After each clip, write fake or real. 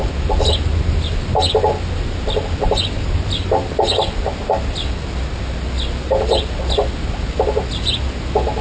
real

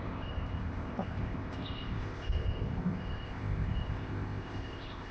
fake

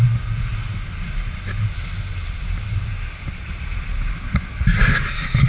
real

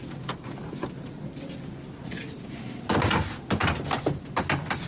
real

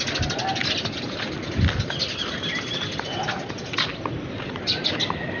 real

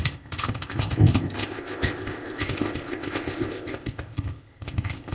fake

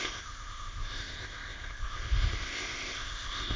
fake